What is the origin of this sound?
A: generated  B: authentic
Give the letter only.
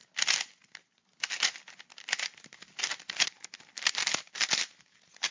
B